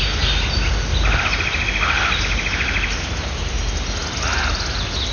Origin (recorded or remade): recorded